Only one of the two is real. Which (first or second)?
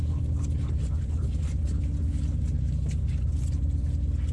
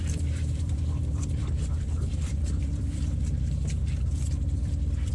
first